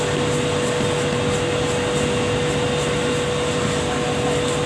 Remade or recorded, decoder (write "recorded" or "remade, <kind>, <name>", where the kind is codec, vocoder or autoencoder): recorded